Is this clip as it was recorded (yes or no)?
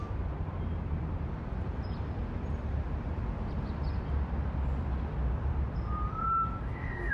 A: yes